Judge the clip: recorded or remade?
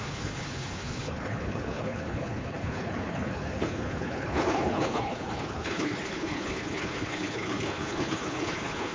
remade